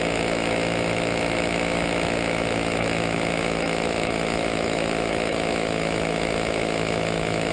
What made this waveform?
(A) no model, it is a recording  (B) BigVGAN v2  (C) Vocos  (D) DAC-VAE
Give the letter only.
D